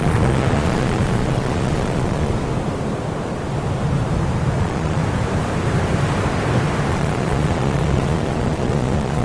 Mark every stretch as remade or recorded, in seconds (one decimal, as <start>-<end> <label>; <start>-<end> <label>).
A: 0.0-2.3 remade; 2.3-4.6 recorded; 4.6-5.0 remade; 5.0-6.9 recorded; 6.9-9.2 remade